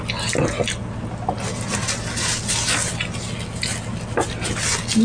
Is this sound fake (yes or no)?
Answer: no